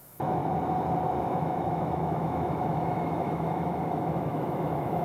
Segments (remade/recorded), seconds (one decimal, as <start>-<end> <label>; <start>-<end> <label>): 0.0-0.4 remade; 0.4-1.2 recorded; 1.2-5.0 remade